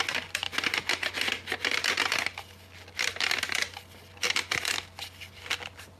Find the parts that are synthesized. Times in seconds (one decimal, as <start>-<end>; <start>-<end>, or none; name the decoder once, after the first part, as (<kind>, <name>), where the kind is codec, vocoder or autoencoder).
none